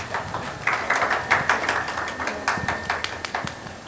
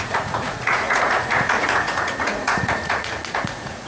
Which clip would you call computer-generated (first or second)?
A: second